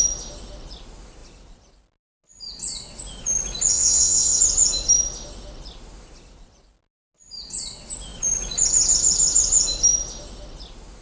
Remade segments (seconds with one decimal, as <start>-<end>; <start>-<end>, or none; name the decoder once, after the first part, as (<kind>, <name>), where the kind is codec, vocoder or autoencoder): 3.7-4.4 (vocoder, WaveNeXt)